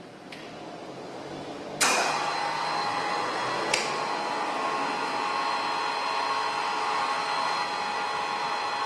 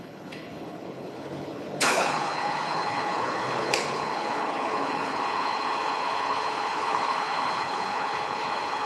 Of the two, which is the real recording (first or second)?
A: first